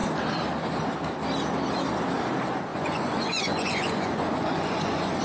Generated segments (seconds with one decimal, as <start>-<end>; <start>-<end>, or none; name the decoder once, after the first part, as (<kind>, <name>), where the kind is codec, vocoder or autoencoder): 2.7-5.2 (vocoder, Vocos)